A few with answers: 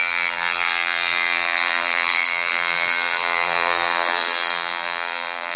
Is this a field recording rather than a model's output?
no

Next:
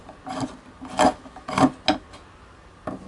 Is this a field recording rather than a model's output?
yes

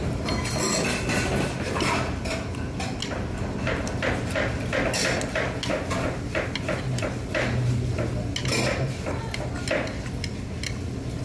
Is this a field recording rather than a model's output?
yes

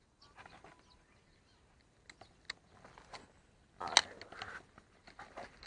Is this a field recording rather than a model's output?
yes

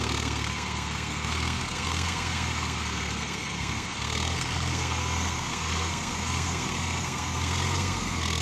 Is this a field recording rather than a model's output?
no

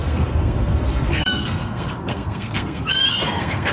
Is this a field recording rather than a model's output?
no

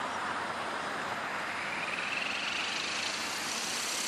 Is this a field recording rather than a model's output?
yes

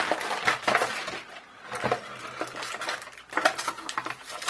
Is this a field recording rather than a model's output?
yes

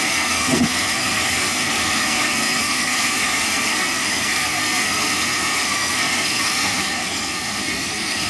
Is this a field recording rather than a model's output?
no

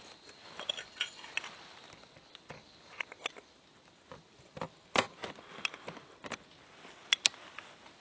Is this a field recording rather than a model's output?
yes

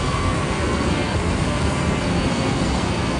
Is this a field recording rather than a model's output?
no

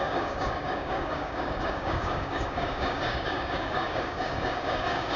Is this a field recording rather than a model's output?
no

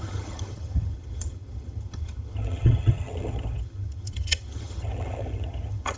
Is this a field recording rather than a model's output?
no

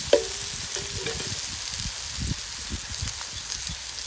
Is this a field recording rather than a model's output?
yes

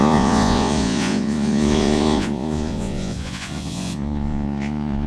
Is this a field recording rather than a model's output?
no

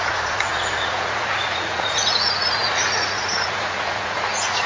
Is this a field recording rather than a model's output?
no